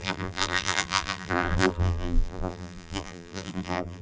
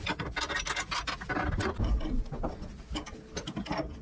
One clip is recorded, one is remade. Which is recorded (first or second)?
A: second